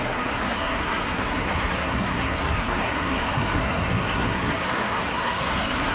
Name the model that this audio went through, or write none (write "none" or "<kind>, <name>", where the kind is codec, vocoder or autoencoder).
codec, SNAC